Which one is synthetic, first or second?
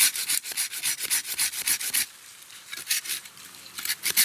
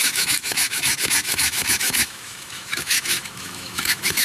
second